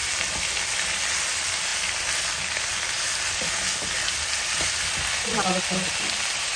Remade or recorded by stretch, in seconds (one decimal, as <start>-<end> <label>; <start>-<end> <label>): 0.0-6.6 recorded